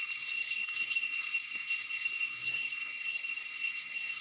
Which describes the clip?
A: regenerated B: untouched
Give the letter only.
A